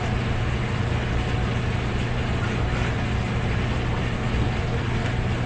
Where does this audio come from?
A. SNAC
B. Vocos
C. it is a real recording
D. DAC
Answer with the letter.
C